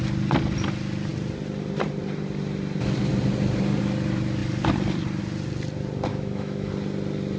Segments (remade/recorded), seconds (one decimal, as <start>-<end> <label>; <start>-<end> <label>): 0.0-6.1 recorded; 6.1-6.7 remade; 6.7-7.4 recorded